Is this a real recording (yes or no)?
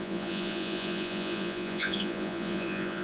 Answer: no